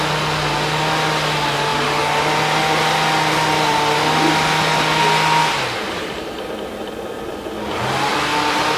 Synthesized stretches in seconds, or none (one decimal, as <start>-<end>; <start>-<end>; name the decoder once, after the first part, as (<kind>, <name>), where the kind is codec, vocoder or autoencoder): none